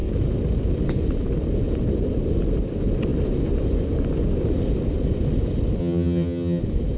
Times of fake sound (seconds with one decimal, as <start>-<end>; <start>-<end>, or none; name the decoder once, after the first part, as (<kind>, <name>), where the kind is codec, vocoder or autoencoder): 5.8-6.6 (vocoder, HiFi-GAN)